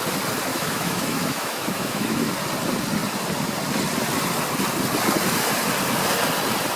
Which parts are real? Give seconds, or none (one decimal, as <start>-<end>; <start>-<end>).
0.0-0.5; 2.3-6.8